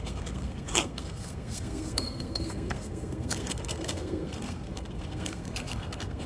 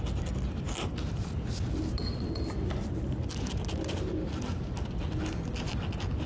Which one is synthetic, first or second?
first